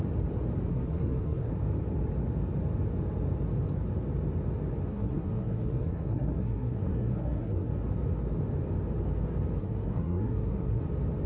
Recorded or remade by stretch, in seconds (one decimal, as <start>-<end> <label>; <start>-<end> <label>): 0.0-0.7 recorded; 0.7-1.5 remade; 1.5-4.9 recorded; 4.9-7.7 remade; 7.7-9.6 recorded; 9.6-10.8 remade; 10.8-11.3 recorded